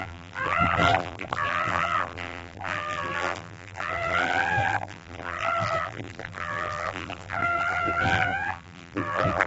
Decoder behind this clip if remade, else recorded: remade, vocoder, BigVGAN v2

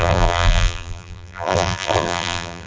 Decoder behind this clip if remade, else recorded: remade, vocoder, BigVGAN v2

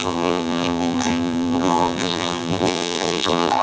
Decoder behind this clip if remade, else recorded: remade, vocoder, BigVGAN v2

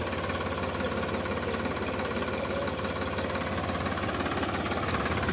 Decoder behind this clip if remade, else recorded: recorded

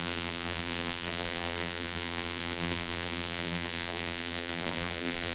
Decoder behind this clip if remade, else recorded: remade, vocoder, BigVGAN v2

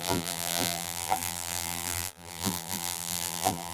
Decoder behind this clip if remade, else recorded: remade, vocoder, BigVGAN v2